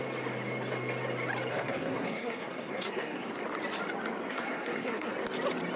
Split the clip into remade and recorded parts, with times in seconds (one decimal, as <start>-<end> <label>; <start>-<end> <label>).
0.0-1.5 recorded; 1.5-3.4 remade; 3.4-4.3 recorded; 4.3-5.1 remade; 5.1-5.8 recorded